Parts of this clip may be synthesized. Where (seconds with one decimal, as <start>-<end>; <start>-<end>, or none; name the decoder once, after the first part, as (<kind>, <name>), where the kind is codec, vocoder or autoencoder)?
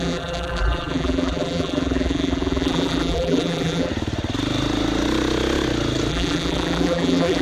0.0-3.9 (vocoder, BigVGAN v2); 6.1-7.4